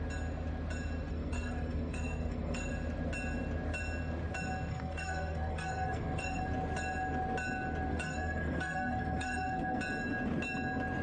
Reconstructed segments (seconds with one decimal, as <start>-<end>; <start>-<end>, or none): 1.1-2.7; 4.7-6.4; 7.9-9.8